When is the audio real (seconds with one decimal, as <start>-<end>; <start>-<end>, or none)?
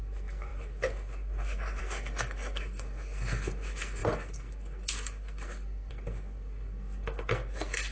none